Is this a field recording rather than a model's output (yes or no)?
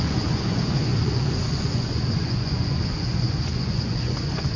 no